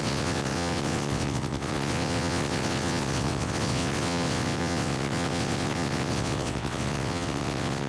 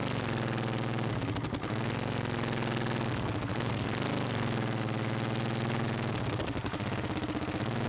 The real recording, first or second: second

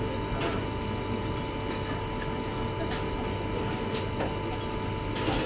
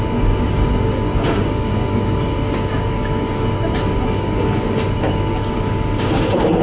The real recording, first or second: first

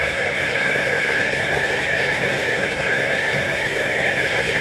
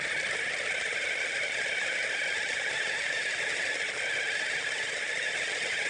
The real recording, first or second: second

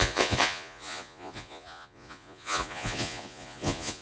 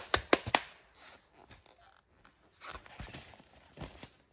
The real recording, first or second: second